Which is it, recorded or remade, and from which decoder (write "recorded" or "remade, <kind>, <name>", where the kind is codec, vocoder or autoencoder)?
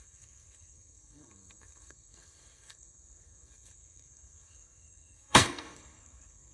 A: remade, codec, SNAC